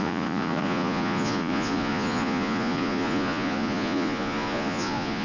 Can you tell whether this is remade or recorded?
remade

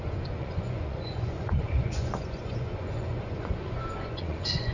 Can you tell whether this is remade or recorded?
remade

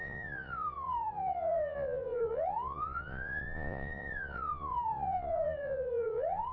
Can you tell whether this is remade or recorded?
remade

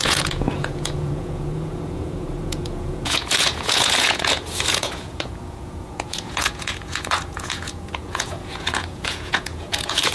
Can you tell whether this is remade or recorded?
remade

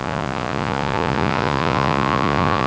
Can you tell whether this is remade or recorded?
remade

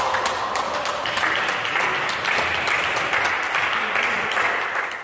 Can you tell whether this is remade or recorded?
recorded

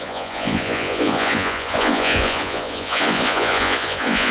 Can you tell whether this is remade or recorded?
remade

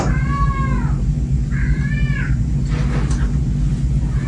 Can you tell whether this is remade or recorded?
recorded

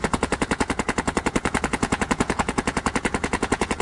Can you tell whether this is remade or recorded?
remade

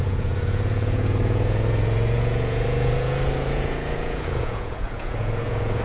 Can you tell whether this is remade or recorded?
remade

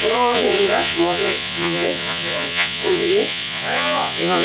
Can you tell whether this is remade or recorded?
remade